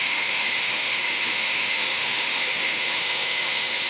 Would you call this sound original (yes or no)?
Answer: no